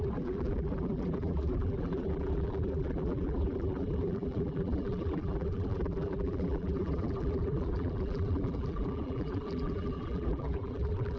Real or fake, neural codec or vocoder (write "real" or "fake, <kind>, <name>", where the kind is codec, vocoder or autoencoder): fake, vocoder, BigVGAN v2